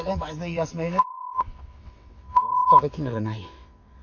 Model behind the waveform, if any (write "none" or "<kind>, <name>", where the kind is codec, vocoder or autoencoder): vocoder, WaveNeXt